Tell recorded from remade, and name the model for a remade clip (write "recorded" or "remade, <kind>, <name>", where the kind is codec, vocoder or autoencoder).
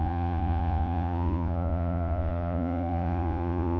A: remade, vocoder, Vocos